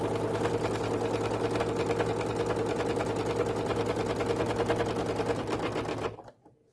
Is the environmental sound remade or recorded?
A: recorded